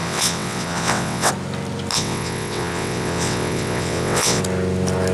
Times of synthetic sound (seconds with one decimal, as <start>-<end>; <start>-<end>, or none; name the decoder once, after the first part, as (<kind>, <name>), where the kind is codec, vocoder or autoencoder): 0.0-1.3 (vocoder, WaveNeXt); 1.9-4.4